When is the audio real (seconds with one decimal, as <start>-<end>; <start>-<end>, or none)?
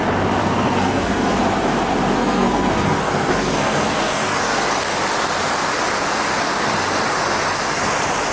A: 0.0-0.4; 1.4-2.2; 4.7-8.3